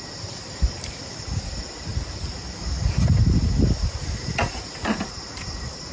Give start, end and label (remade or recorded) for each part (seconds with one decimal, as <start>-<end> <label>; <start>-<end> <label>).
0.0-5.9 recorded